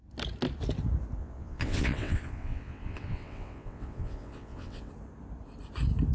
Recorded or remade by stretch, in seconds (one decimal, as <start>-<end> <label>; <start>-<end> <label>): 0.0-1.2 recorded; 1.2-4.9 remade; 4.9-6.1 recorded